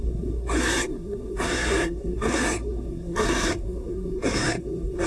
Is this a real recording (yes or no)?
no